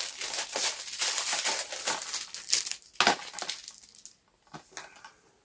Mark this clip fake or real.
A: real